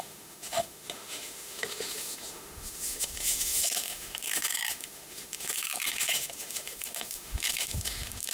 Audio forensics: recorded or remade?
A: remade